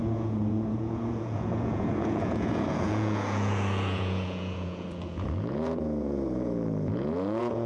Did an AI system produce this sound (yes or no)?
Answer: yes